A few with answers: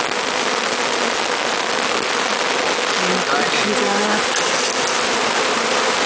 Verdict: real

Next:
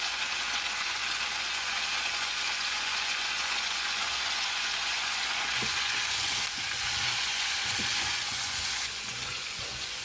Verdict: fake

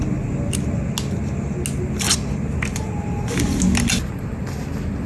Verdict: real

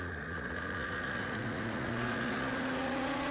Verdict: fake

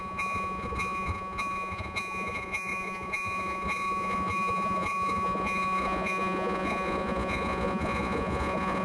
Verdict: fake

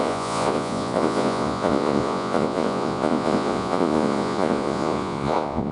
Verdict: fake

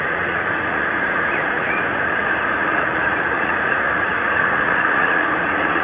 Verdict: fake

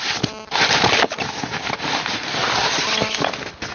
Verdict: real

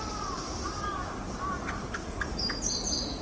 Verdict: real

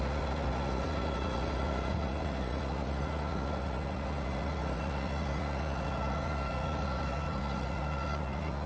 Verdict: fake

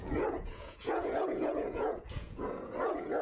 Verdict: fake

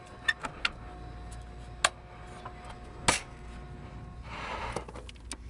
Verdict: real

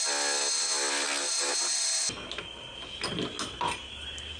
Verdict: real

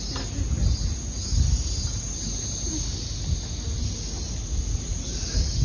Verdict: real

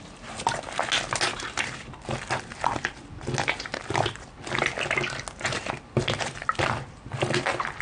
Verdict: real